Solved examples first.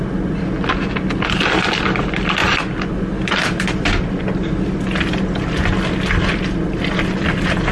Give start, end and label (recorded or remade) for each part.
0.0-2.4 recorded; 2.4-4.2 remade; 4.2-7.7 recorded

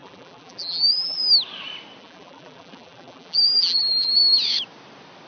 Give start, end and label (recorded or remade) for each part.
0.0-1.2 remade; 1.2-2.0 recorded; 2.0-4.2 remade; 4.2-5.3 recorded

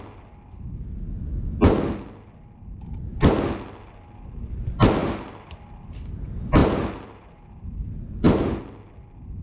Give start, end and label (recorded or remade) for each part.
0.0-5.0 recorded; 5.0-5.6 remade; 5.6-6.6 recorded; 6.6-8.6 remade; 8.6-9.4 recorded

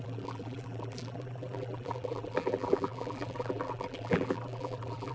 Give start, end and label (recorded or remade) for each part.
0.0-5.1 remade

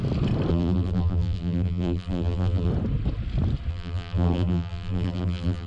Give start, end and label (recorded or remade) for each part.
0.0-0.5 recorded; 0.5-2.7 remade; 2.7-3.7 recorded; 3.7-5.7 remade

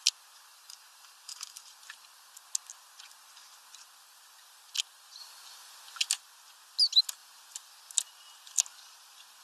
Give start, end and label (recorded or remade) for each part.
0.0-0.5 recorded; 0.5-1.8 remade; 1.8-9.4 recorded

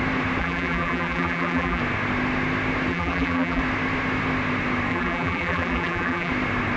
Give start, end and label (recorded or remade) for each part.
0.0-0.4 recorded; 0.4-1.8 remade; 1.8-2.9 recorded; 2.9-3.6 remade; 3.6-4.9 recorded; 4.9-6.3 remade; 6.3-6.8 recorded

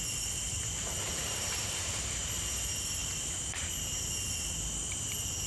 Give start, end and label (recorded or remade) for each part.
0.0-0.5 recorded; 0.5-2.1 remade; 2.1-5.5 recorded